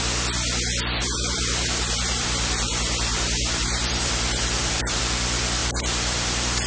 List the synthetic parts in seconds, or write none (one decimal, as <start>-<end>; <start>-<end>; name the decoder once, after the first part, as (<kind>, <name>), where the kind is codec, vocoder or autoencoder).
1.0-5.0 (vocoder, BigVGAN v2); 5.6-6.7